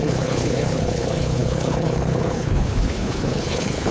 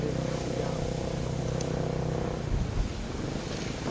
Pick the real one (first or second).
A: second